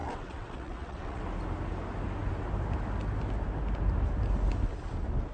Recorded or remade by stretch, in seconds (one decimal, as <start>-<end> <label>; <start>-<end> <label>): 0.0-1.2 remade; 1.2-5.3 recorded